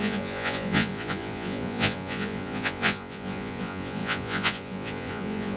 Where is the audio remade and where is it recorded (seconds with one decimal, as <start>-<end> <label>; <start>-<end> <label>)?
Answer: 0.0-5.6 remade